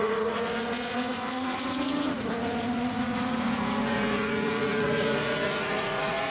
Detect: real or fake fake